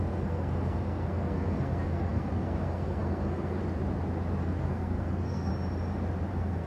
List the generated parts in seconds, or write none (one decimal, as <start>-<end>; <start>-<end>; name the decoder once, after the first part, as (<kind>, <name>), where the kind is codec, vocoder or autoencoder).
0.0-3.6 (codec, SNAC); 4.4-5.5; 6.3-6.7

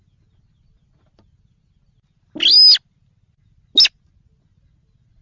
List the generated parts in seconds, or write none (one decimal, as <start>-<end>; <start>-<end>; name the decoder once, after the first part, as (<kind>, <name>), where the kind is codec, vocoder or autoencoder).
none

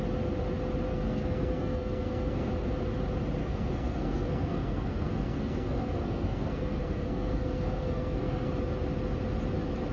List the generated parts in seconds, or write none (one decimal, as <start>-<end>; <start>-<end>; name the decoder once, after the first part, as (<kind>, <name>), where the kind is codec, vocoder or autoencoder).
0.9-2.5 (codec, SNAC); 3.4-8.5

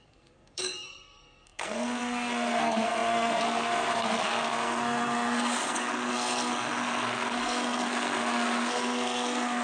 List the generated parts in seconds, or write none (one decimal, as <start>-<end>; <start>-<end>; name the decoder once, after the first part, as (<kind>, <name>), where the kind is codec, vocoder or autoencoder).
0.0-9.6 (codec, SNAC)

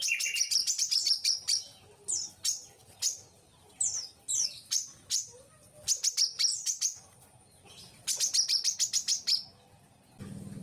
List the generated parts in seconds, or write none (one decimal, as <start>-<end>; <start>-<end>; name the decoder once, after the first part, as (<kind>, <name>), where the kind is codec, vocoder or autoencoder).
0.6-4.6 (vocoder, BigVGAN v2); 6.5-7.4